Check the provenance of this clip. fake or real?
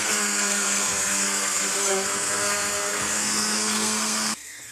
fake